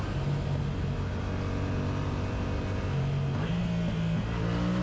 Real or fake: real